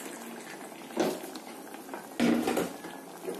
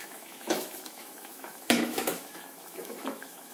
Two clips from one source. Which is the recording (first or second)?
first